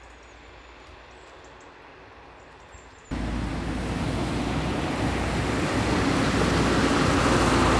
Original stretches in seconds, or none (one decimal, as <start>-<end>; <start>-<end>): 0.0-7.8